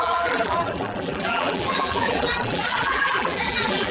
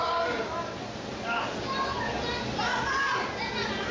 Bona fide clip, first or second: second